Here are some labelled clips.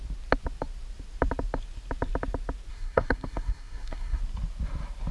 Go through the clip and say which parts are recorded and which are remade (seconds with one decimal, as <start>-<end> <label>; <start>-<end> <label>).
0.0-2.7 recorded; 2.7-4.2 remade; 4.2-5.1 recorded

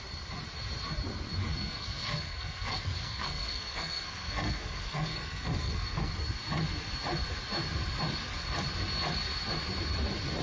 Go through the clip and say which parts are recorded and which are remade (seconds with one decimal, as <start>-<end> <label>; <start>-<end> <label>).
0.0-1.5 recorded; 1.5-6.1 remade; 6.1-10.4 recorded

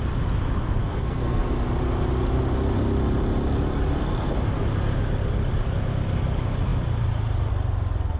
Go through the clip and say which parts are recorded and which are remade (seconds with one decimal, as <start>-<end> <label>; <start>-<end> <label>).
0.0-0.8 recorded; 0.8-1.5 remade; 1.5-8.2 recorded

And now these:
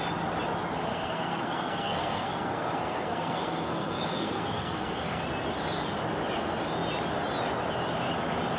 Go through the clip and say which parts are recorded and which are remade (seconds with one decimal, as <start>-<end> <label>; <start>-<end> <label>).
0.0-0.9 recorded; 0.9-5.2 remade; 5.2-8.6 recorded

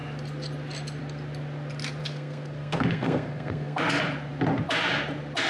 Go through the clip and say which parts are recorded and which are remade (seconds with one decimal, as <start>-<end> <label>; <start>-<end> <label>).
0.0-2.0 recorded; 2.0-3.8 remade; 3.8-5.5 recorded